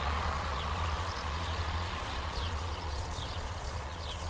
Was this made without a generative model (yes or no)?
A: no